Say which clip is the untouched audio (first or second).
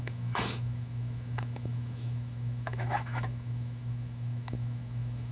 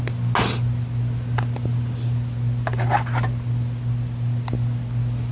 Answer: second